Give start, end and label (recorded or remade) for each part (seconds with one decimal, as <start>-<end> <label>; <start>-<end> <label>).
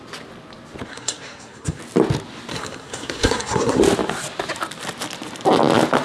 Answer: 0.0-0.9 recorded; 0.9-1.8 remade; 1.8-2.5 recorded; 2.5-3.8 remade; 3.8-6.0 recorded